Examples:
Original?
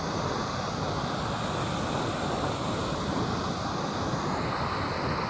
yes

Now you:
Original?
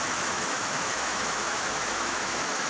no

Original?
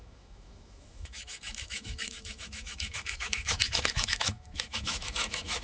no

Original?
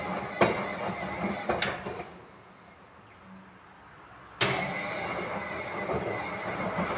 yes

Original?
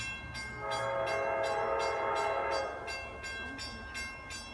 yes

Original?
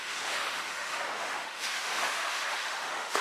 no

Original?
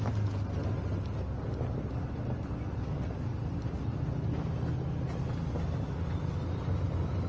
yes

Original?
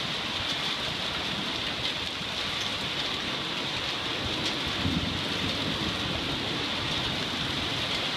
yes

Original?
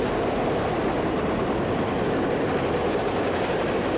yes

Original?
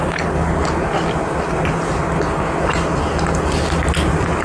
yes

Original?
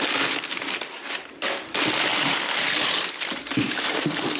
yes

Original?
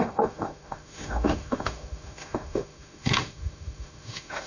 no